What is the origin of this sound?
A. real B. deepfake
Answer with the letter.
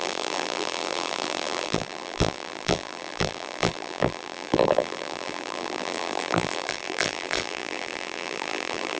B